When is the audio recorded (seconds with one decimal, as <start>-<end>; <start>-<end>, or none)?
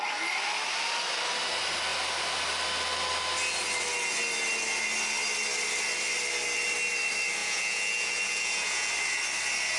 0.0-7.4; 8.9-9.8